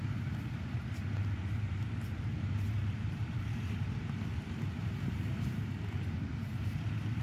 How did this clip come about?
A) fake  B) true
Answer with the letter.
A